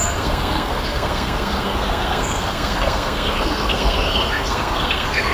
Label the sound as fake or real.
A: fake